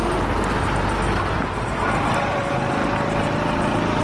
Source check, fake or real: real